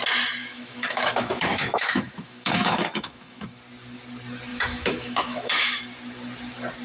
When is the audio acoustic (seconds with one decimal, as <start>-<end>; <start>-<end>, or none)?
0.0-0.4; 3.6-4.5; 5.8-6.8